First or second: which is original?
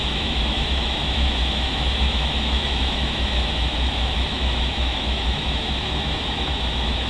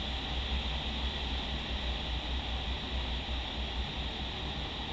second